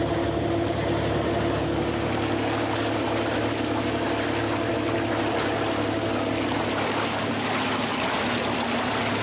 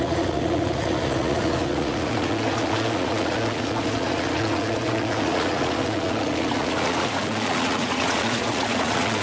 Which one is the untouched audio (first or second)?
first